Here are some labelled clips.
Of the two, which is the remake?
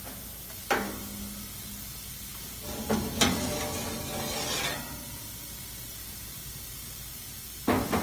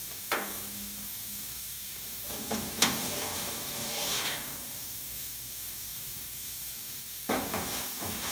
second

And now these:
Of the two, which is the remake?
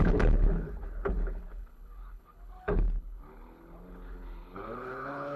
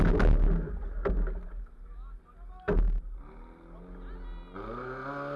first